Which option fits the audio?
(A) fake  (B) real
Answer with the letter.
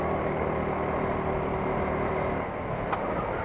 B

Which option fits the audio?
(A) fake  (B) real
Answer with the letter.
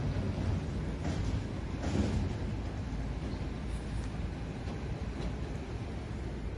B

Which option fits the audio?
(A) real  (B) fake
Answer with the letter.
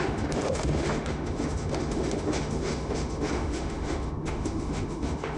B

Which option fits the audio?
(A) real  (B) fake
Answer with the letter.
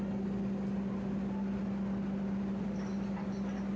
A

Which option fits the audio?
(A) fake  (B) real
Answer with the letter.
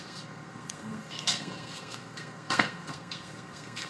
A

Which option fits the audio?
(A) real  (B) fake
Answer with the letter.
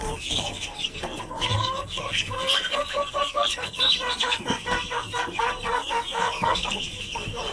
B